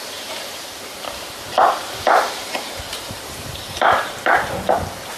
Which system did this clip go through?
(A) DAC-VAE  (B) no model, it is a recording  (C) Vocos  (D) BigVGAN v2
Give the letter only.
D